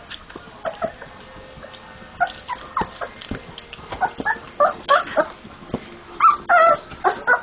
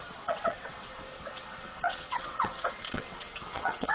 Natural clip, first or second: first